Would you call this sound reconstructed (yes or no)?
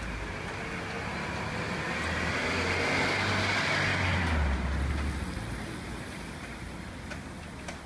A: no